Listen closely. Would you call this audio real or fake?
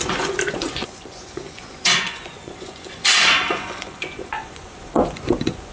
fake